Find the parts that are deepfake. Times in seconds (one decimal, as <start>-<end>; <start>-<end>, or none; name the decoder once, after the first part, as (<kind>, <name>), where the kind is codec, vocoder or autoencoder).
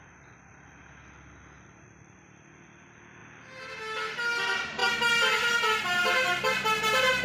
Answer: none